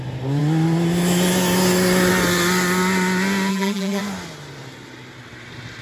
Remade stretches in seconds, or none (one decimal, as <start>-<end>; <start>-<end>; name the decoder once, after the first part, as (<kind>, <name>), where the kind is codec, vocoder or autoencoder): 3.5-4.0 (vocoder, BigVGAN v2)